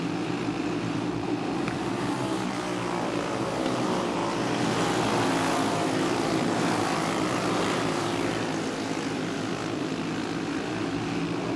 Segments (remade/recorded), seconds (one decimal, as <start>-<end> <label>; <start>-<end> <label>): 0.0-4.2 remade; 4.2-6.4 recorded; 6.4-11.6 remade